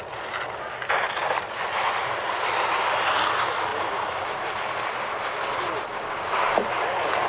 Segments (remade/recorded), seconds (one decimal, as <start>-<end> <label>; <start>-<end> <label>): 0.0-7.3 recorded